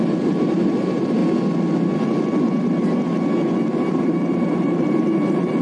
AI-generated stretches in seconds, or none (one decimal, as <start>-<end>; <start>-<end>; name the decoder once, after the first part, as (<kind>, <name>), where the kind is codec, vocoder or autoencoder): 0.0-1.2 (vocoder, BigVGAN v2); 3.9-5.6